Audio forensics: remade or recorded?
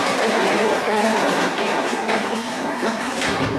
remade